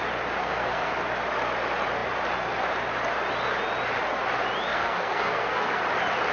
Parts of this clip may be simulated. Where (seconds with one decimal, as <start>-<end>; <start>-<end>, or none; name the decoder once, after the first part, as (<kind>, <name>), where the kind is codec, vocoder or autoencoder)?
0.4-0.9 (codec, SNAC); 4.7-5.8